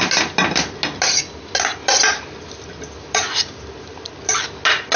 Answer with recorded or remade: recorded